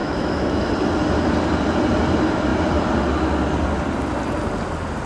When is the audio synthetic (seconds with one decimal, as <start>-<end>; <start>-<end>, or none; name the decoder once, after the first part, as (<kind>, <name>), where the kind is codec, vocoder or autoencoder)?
0.0-0.6 (autoencoder, DAC-VAE)